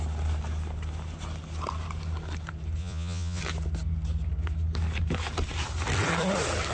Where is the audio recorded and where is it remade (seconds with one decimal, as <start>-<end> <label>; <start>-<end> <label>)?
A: 0.0-2.8 recorded; 2.8-3.4 remade; 3.4-6.7 recorded